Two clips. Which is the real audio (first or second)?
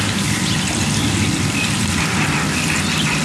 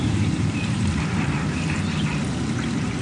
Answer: first